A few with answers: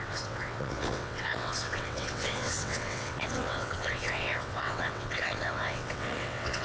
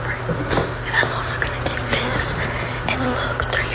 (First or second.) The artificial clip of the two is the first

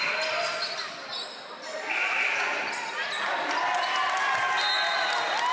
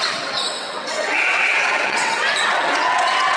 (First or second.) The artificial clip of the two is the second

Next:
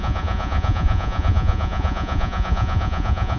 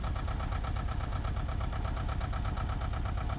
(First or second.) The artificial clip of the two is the first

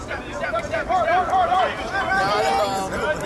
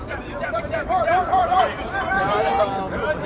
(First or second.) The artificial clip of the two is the second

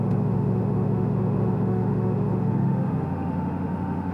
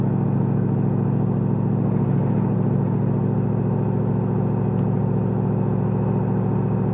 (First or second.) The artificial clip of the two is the first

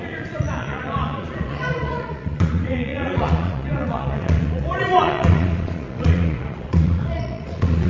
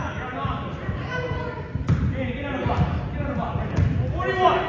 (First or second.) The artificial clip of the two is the first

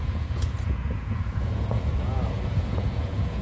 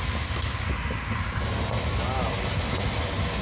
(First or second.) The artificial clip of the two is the first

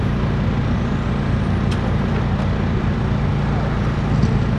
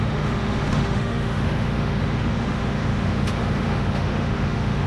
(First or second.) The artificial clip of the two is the second